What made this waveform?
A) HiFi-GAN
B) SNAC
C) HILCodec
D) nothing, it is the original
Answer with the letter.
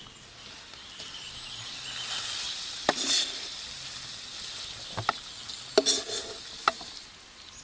D